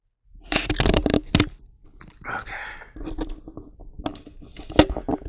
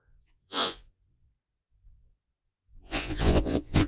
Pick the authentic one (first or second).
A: first